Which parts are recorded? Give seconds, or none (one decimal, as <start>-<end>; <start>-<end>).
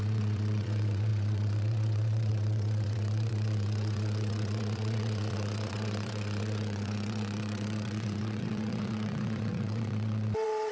none